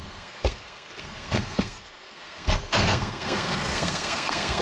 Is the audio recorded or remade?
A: remade